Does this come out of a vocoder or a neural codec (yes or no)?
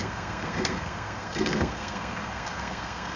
yes